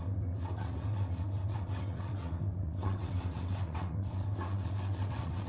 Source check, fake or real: fake